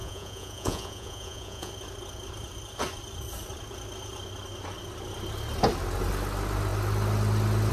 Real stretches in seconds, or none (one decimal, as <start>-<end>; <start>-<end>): 1.7-7.7

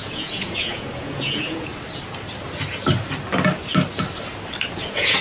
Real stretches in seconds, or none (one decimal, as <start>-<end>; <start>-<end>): 1.7-4.8

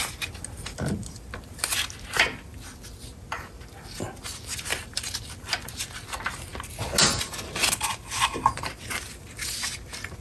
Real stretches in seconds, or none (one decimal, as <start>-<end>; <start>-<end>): 0.0-10.2

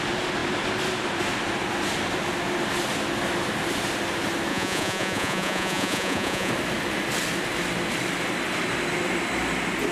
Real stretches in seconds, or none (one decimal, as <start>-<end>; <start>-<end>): 0.0-4.5; 6.5-9.9

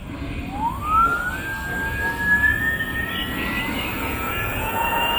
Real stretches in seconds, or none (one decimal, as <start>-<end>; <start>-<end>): 0.0-3.9

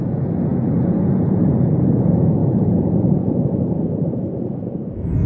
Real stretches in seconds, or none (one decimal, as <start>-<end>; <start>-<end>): none

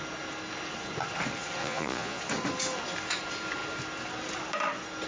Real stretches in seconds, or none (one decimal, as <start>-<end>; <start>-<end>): 0.0-1.6; 2.2-5.1

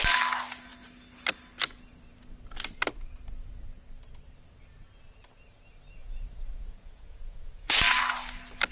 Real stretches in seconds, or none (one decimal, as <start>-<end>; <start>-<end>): 0.0-6.0; 7.8-8.7